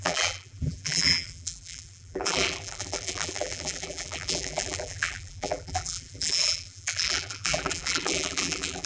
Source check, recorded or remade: remade